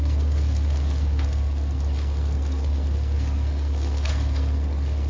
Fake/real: fake